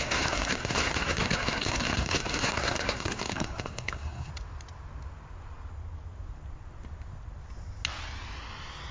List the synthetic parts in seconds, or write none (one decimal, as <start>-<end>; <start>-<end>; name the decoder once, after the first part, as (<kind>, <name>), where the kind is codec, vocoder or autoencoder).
0.0-4.3 (codec, SNAC)